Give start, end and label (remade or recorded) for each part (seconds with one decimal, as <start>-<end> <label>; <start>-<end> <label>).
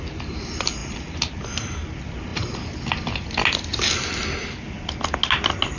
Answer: 0.0-5.8 recorded